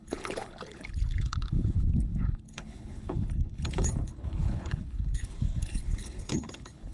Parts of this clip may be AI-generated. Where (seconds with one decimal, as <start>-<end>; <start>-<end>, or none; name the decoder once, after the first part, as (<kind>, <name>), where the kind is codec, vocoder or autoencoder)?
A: 0.0-6.9 (codec, HILCodec)